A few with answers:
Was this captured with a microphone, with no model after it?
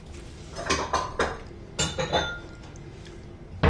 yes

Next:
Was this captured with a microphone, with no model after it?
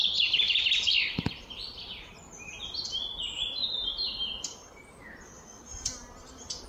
yes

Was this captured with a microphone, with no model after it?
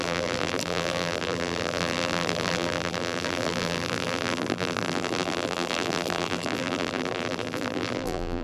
no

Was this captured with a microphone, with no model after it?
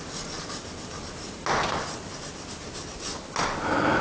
yes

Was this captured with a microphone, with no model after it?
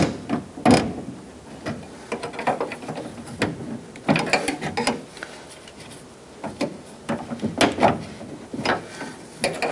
yes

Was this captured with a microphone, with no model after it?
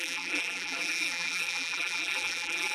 no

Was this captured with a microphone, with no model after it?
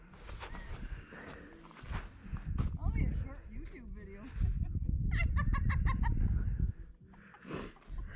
yes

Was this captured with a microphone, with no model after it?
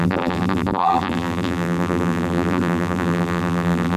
no